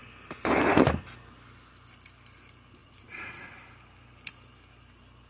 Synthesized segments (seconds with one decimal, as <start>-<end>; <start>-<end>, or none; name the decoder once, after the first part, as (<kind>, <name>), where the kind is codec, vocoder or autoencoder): 2.8-3.5 (vocoder, Vocos)